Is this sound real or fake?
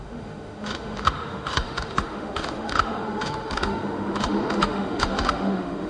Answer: fake